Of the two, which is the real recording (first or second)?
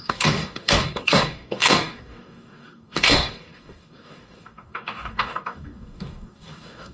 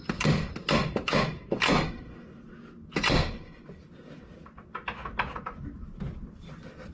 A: second